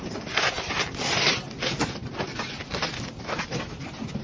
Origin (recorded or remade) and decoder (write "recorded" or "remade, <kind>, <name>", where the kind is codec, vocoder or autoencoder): recorded